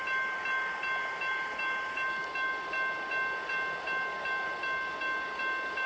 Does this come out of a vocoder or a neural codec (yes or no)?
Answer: no